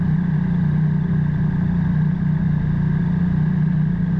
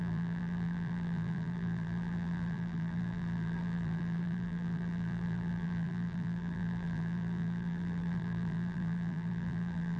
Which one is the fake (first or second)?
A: second